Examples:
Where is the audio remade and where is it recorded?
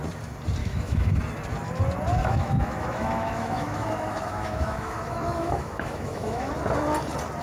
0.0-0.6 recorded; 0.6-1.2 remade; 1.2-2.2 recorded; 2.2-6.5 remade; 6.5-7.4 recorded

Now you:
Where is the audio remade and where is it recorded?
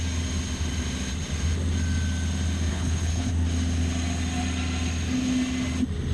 0.0-2.7 recorded; 2.7-3.3 remade; 3.3-6.1 recorded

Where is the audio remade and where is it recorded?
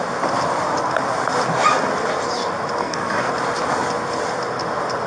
0.0-2.8 recorded; 2.8-3.3 remade; 3.3-5.1 recorded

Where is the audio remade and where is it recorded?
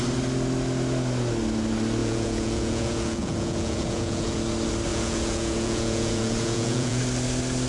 0.0-2.0 recorded; 2.0-4.4 remade; 4.4-4.9 recorded; 4.9-7.0 remade; 7.0-7.7 recorded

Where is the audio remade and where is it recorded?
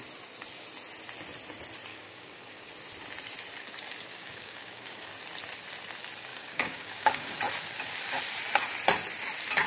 0.0-1.9 recorded; 1.9-2.7 remade; 2.7-4.1 recorded; 4.1-5.1 remade; 5.1-6.3 recorded; 6.3-7.4 remade; 7.4-9.7 recorded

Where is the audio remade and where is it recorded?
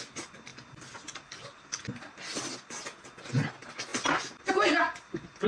0.0-5.5 recorded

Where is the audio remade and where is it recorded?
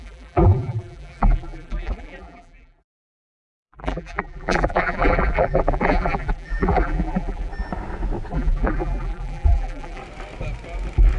0.0-7.5 remade; 7.5-8.3 recorded; 8.3-10.0 remade; 10.0-11.2 recorded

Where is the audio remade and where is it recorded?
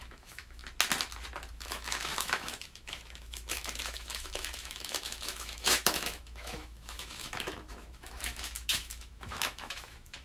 0.0-0.6 remade; 0.6-1.5 recorded; 1.5-10.2 remade